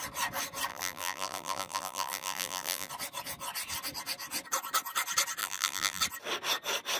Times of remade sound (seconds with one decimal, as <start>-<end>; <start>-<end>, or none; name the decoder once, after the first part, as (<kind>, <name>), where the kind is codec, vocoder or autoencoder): 0.7-2.9 (vocoder, BigVGAN v2); 5.4-6.0